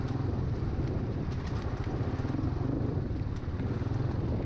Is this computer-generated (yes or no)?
no